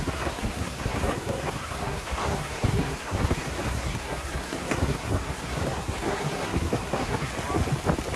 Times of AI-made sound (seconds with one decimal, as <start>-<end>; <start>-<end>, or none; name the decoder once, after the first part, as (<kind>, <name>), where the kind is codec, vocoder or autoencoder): 0.0-7.3 (codec, SNAC)